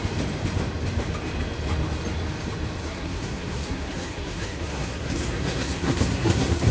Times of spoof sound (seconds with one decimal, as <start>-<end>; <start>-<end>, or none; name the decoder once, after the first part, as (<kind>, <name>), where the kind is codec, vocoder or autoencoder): 2.8-6.7 (codec, SNAC)